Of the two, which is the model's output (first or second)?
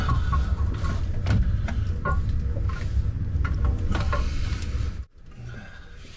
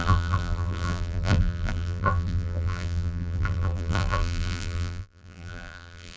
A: second